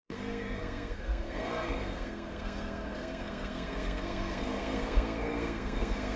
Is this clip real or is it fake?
fake